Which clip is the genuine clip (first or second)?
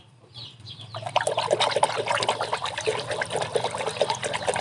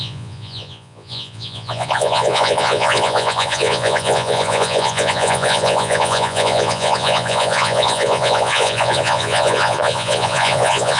first